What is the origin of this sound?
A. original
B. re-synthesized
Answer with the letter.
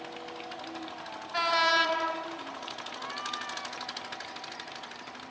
A